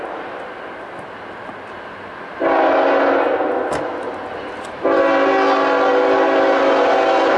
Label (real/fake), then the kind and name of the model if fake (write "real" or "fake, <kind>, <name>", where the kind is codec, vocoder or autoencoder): real